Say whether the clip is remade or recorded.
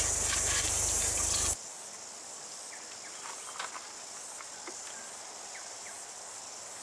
recorded